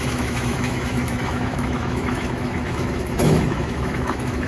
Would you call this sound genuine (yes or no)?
no